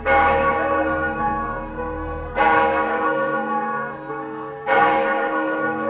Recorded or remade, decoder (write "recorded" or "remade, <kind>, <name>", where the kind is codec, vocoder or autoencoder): remade, codec, SNAC